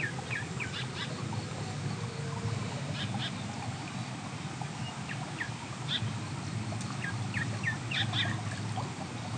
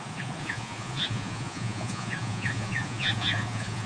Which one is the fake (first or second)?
second